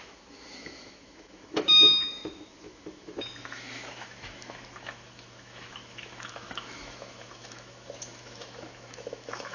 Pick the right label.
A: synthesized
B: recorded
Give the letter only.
A